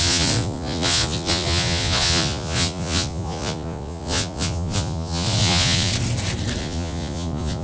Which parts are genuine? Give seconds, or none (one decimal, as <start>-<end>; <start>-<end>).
5.9-6.6